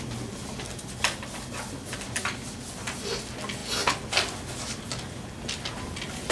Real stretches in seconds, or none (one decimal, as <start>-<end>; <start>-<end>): 0.0-6.3